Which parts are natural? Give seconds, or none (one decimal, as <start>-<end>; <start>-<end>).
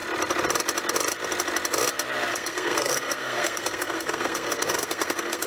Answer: 0.0-2.3